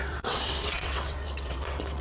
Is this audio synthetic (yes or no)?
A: yes